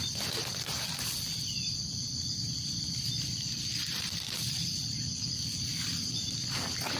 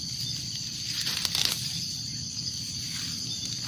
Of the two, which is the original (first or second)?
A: second